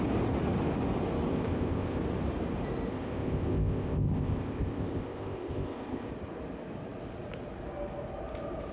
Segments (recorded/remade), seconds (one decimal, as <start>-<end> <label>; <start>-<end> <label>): 0.0-1.3 recorded; 1.3-2.0 remade; 2.0-2.9 recorded; 2.9-6.1 remade; 6.1-8.7 recorded